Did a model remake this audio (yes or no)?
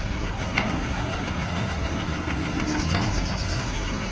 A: yes